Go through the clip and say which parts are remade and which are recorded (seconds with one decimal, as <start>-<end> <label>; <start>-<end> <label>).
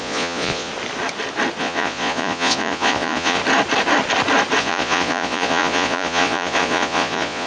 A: 0.0-0.7 remade; 0.7-1.6 recorded; 1.6-3.4 remade; 3.4-4.6 recorded; 4.6-7.5 remade